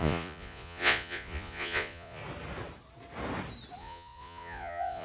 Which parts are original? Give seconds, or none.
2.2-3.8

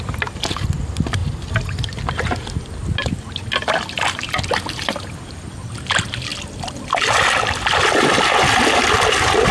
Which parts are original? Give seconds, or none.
0.0-9.5

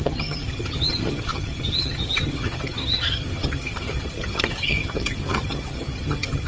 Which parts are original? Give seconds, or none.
none